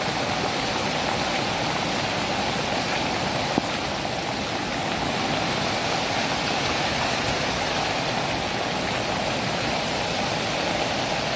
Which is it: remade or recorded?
recorded